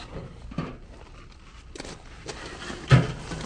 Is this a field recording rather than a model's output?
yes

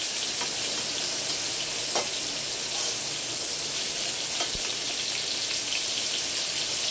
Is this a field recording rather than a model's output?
yes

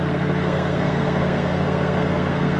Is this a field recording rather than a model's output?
no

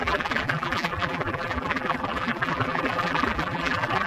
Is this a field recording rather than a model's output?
no